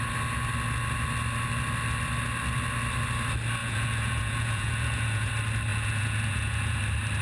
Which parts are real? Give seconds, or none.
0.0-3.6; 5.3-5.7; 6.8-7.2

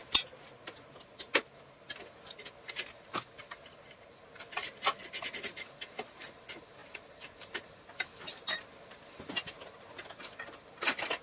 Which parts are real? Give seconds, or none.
0.0-11.2

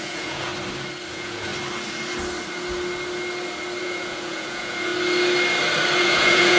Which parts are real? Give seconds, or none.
0.5-1.1; 1.5-3.8; 4.9-6.0

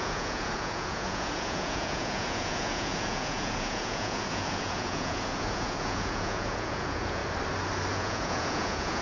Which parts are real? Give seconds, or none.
7.2-7.9

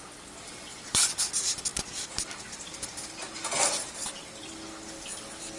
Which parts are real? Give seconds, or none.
0.0-5.6